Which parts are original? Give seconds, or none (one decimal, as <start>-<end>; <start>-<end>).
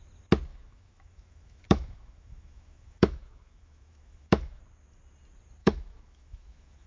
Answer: 0.0-0.5; 4.6-5.6